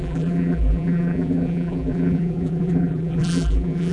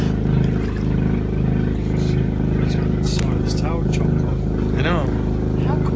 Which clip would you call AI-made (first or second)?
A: first